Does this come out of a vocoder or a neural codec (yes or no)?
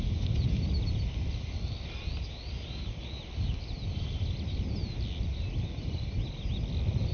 no